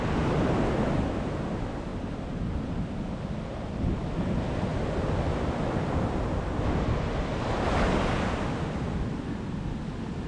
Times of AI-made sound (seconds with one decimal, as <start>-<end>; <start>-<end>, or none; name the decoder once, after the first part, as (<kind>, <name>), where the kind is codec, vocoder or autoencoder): none